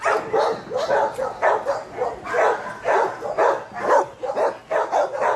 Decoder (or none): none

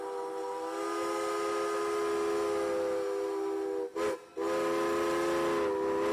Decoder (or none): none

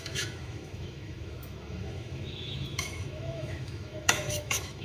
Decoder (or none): autoencoder, DAC-VAE